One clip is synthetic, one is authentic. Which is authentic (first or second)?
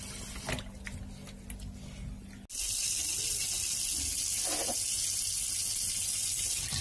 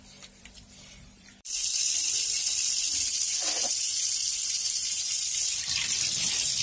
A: first